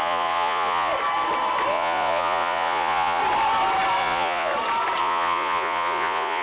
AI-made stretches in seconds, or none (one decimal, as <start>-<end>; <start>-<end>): 0.0-0.9; 1.7-3.2; 4.0-4.5; 5.0-6.4